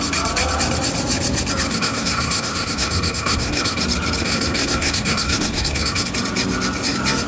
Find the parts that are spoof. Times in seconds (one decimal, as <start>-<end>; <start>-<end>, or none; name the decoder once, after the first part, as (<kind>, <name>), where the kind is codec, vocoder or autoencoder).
1.7-3.8 (codec, SNAC); 4.2-6.1